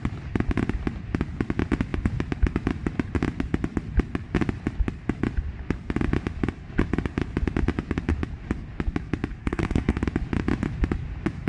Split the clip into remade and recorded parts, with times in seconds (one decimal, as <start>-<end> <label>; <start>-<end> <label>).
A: 0.0-9.4 recorded; 9.4-10.0 remade; 10.0-11.5 recorded

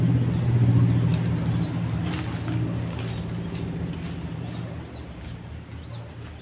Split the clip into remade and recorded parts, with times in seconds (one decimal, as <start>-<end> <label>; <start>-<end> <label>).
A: 0.0-6.4 recorded